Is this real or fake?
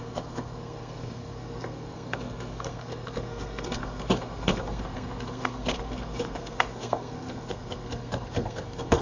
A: fake